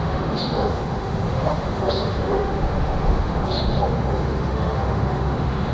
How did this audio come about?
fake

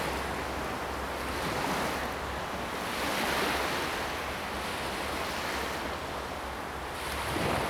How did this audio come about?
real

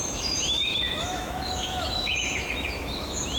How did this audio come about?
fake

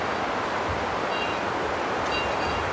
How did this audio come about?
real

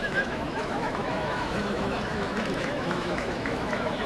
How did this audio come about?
fake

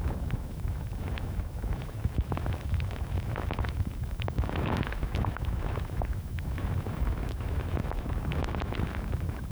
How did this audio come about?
fake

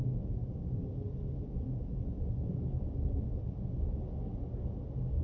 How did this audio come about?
real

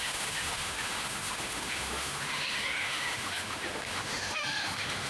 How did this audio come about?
fake